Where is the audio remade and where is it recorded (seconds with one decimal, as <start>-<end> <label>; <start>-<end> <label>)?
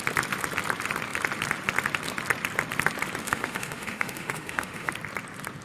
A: 0.0-3.2 recorded; 3.2-4.9 remade; 4.9-5.6 recorded